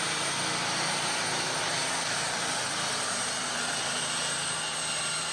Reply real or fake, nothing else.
real